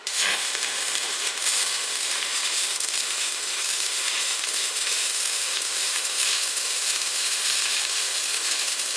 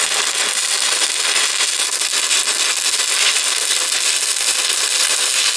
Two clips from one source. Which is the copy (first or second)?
first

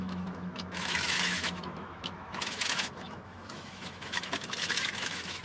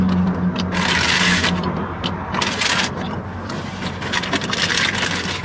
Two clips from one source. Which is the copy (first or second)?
first